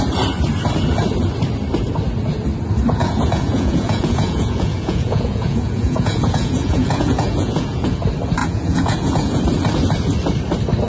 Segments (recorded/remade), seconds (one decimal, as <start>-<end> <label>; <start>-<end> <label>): 0.0-3.0 recorded; 3.0-8.0 remade; 8.0-8.4 recorded; 8.4-9.4 remade; 9.4-10.9 recorded